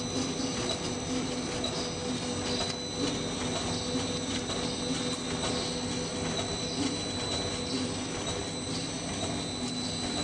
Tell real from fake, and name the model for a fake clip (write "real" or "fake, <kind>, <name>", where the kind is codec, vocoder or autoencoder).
real